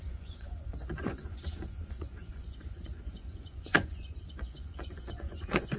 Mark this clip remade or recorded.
remade